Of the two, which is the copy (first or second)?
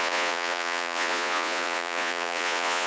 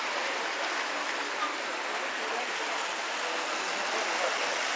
first